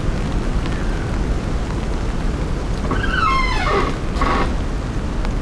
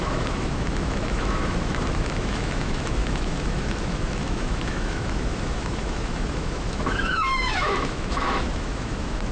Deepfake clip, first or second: second